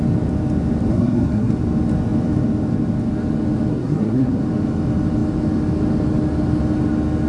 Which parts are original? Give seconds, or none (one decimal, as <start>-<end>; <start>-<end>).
0.0-0.9; 1.5-3.7; 4.4-7.3

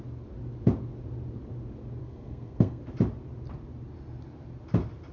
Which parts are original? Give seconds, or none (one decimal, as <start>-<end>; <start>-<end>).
0.0-2.0; 2.8-5.1

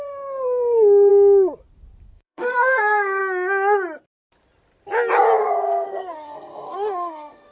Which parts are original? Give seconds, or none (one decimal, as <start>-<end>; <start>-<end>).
1.1-2.1; 3.2-5.4

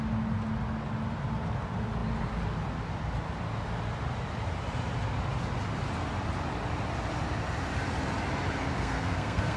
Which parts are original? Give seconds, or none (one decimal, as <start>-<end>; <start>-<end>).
0.0-8.7

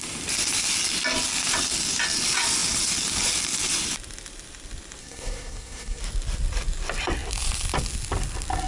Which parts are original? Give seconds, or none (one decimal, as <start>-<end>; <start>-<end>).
0.0-5.0; 6.0-8.7